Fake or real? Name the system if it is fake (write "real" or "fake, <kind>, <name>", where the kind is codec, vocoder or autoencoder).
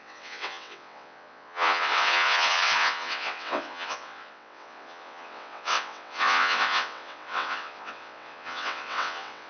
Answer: fake, vocoder, WaveNeXt